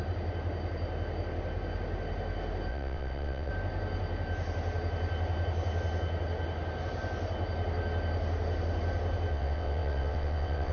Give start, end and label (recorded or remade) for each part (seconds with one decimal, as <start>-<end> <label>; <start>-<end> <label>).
0.0-2.7 recorded; 2.7-3.5 remade; 3.5-9.3 recorded; 9.3-10.7 remade